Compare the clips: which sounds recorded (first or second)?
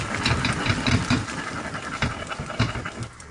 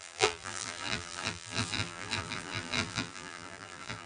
first